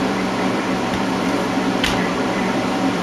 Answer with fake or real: fake